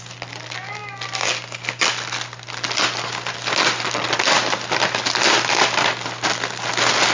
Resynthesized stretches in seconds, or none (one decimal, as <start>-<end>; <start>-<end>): none